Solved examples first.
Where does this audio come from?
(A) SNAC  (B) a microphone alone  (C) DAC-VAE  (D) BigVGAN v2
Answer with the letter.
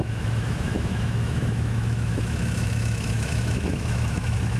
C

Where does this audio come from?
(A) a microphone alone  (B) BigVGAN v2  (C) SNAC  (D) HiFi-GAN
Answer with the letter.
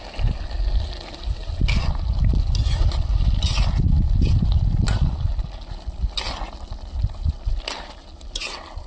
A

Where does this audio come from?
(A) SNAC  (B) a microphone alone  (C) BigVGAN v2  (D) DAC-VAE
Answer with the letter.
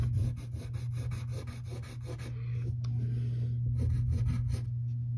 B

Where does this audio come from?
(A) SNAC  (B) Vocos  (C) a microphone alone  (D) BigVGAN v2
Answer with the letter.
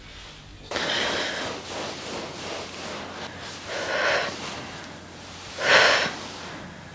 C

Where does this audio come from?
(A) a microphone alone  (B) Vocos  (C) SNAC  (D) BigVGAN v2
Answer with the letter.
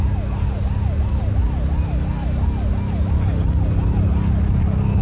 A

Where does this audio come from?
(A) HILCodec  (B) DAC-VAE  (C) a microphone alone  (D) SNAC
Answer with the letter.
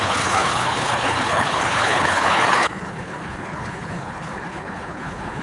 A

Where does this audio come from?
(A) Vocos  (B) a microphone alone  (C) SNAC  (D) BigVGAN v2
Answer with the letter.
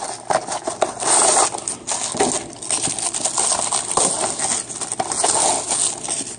B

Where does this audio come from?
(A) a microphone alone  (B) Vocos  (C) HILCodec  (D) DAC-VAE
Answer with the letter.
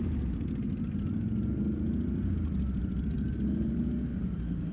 A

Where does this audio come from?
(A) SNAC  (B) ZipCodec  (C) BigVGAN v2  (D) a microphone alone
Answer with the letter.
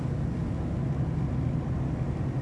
D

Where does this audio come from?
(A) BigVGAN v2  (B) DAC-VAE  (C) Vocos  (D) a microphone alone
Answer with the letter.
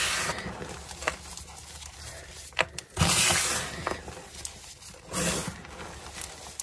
D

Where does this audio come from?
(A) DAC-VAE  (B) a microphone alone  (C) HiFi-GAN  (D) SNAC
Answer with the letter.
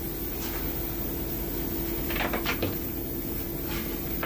B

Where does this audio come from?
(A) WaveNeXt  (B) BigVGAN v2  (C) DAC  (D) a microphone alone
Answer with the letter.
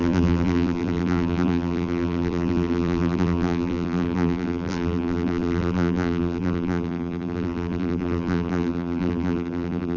B